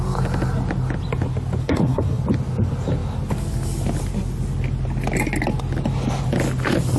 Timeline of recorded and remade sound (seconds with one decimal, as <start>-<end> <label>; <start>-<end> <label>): 0.0-1.6 recorded; 1.6-2.2 remade; 2.2-7.0 recorded